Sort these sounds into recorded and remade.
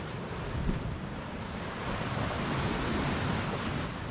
recorded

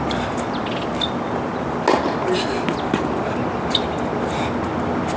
recorded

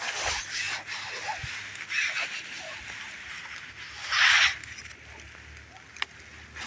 recorded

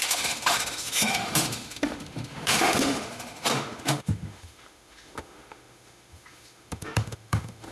remade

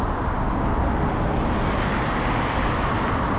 recorded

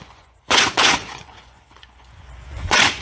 remade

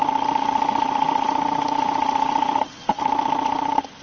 recorded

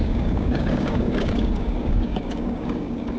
remade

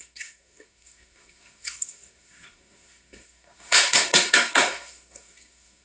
remade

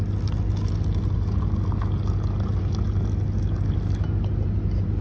recorded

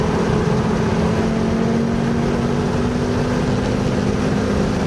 recorded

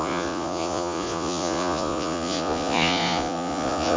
remade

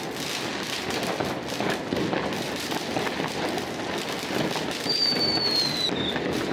recorded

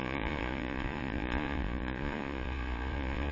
remade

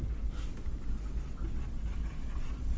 recorded